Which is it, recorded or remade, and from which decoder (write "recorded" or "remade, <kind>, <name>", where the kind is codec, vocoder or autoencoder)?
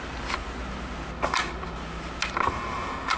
recorded